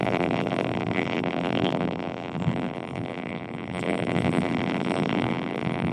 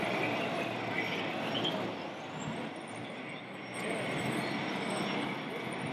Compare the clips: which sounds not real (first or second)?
first